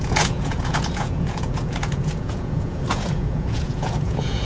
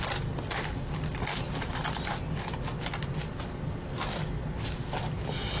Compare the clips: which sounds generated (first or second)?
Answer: first